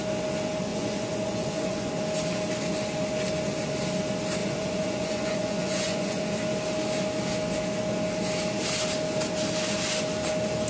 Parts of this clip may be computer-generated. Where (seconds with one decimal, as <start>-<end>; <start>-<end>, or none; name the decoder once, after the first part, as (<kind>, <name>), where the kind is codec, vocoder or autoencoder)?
0.7-1.9 (vocoder, Vocos); 4.4-6.2